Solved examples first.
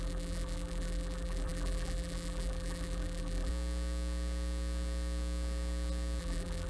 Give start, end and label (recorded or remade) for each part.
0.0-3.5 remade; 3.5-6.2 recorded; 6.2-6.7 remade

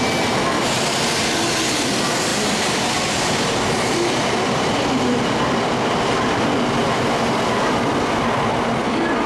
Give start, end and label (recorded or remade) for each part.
0.0-2.3 recorded; 2.3-5.9 remade; 5.9-6.8 recorded; 6.8-7.9 remade; 7.9-9.3 recorded

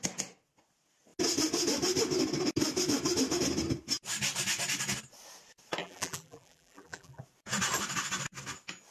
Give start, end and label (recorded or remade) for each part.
0.0-5.8 recorded; 5.8-7.2 remade; 7.2-8.9 recorded

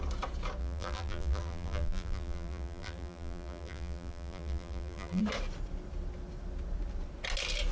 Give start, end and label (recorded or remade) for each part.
0.0-0.6 recorded; 0.6-5.2 remade; 5.2-7.7 recorded

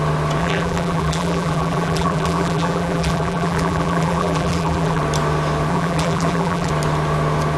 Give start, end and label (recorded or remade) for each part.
0.0-0.4 recorded; 0.4-5.0 remade; 5.0-5.7 recorded; 5.7-6.7 remade; 6.7-7.6 recorded